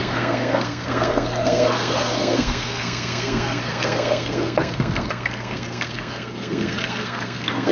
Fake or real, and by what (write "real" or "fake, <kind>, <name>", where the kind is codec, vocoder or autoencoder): fake, codec, SNAC